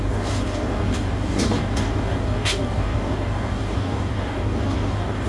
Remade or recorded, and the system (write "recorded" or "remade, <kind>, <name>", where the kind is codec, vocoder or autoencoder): remade, codec, DAC